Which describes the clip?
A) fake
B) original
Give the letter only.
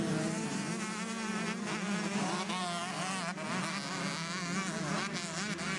B